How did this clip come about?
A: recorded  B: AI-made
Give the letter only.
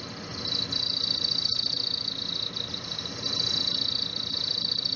A